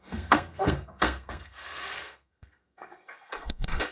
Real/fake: fake